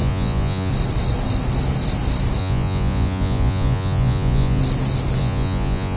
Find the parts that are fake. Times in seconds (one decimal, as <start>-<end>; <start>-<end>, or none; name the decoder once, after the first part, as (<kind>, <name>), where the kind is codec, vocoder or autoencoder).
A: 0.0-0.7 (vocoder, Vocos); 2.4-4.6; 5.2-6.0